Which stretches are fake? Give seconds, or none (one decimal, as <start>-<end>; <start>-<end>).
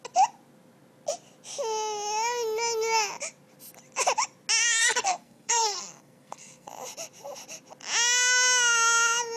4.8-6.7